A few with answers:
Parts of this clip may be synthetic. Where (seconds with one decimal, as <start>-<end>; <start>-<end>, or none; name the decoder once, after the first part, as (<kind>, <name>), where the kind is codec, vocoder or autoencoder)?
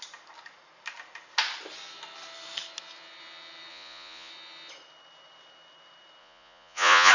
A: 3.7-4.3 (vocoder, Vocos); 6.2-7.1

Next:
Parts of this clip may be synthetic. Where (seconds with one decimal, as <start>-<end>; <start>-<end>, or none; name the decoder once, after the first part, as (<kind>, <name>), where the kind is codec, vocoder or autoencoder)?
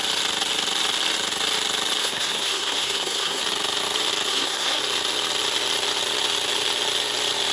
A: 2.0-3.4 (codec, SNAC); 4.3-4.8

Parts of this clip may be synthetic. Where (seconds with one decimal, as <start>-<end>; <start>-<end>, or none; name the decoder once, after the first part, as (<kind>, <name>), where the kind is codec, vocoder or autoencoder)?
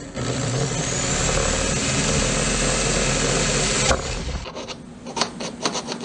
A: none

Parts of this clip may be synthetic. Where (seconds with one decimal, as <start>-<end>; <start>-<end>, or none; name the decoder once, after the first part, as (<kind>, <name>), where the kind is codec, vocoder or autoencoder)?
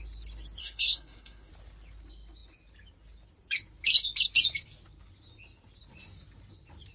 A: 0.6-1.5 (codec, SNAC)